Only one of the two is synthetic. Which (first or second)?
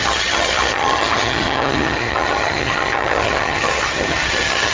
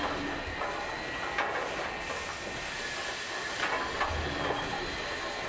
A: first